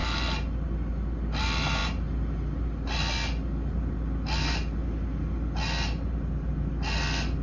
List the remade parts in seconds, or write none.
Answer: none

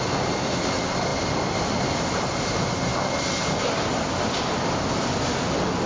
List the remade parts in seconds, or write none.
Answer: none

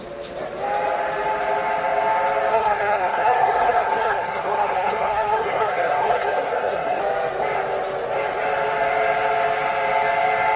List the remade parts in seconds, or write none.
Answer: 2.5-7.0 (codec, SNAC)

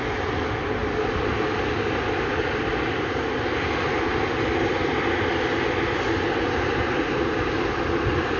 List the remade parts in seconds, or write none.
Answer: none

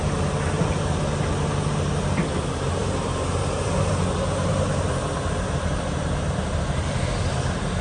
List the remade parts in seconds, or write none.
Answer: 2.8-7.0 (vocoder, BigVGAN v2)